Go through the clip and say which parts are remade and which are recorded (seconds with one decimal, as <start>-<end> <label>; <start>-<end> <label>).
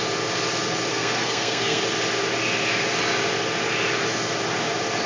0.0-0.9 recorded; 0.9-1.8 remade; 1.8-5.1 recorded